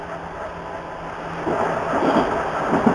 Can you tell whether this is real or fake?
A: real